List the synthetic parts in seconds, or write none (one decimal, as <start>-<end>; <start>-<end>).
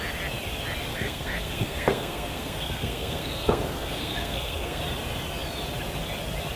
0.9-4.8